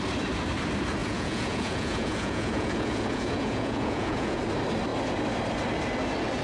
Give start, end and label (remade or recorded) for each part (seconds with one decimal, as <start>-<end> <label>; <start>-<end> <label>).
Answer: 0.0-1.0 recorded; 1.0-4.4 remade; 4.4-6.4 recorded